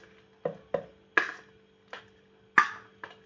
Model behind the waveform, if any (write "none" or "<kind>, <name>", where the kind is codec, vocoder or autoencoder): none